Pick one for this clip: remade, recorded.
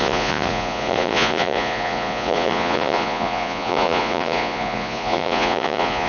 remade